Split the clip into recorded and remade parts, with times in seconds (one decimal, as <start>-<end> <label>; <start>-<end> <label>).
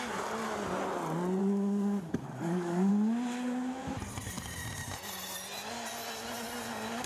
0.0-1.4 recorded; 1.4-2.9 remade; 2.9-7.1 recorded